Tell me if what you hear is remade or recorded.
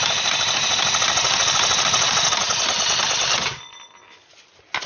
recorded